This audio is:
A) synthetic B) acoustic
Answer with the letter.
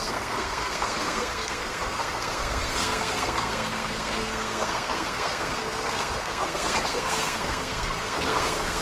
A